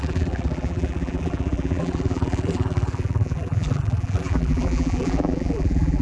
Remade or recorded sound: remade